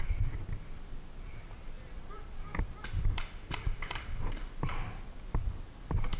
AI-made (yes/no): no